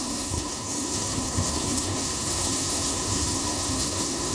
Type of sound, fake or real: fake